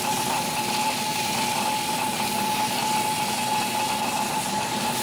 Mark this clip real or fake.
fake